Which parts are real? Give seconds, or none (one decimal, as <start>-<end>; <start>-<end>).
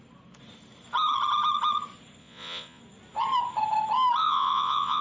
0.0-2.2; 2.8-4.2